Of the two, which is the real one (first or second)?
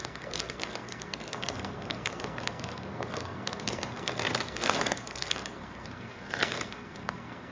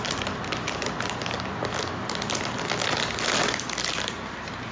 second